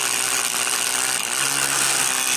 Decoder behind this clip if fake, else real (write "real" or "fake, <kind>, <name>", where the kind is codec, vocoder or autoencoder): real